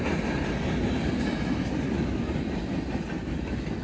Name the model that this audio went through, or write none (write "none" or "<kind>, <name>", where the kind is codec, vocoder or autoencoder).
none